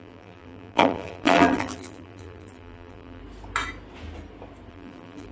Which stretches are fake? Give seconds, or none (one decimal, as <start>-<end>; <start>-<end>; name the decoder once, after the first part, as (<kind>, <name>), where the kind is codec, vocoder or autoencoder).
0.0-3.2 (vocoder, BigVGAN v2); 4.7-5.3